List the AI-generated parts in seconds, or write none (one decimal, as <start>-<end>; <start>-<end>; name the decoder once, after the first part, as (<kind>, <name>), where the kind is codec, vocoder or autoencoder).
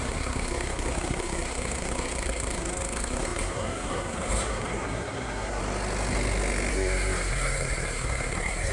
0.0-5.6 (codec, SNAC); 6.7-8.7